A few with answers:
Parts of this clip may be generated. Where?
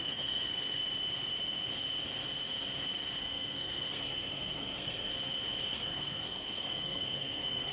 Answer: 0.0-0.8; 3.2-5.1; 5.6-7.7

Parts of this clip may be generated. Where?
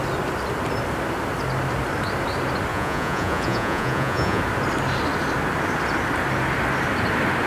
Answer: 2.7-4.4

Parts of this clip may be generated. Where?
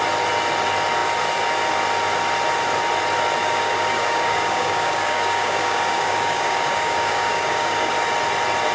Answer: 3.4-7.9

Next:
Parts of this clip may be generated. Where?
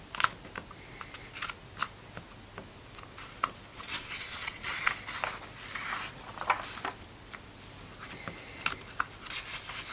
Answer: 3.7-4.9